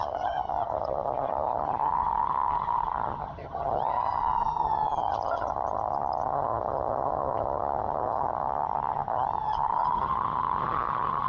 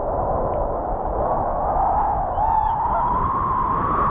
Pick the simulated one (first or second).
first